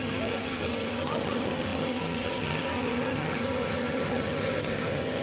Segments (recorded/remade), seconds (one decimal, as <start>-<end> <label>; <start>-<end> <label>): 0.0-5.2 remade